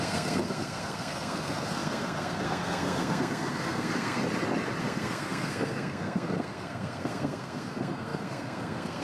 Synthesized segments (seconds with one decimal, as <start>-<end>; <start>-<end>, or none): 0.0-4.2; 4.8-9.0